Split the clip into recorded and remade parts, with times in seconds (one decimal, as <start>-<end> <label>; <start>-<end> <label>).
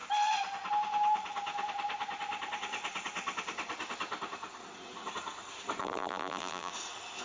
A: 0.0-5.8 recorded; 5.8-6.7 remade; 6.7-7.2 recorded